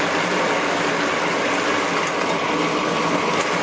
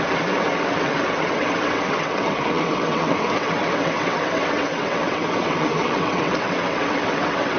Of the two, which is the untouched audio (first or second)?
first